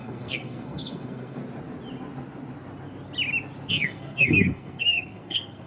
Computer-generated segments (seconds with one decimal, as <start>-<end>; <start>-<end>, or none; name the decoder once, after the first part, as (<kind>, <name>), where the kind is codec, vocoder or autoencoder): 0.0-1.4 (codec, SNAC); 3.7-5.7